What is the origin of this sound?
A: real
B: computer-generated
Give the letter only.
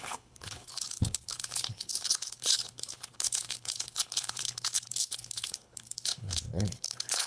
B